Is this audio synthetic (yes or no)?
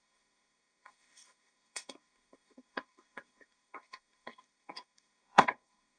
yes